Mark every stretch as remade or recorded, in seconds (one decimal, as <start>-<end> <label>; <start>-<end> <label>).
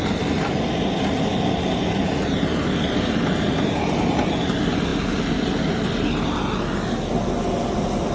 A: 0.0-8.1 recorded